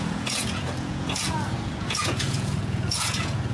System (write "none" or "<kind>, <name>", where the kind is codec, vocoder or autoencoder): vocoder, Vocos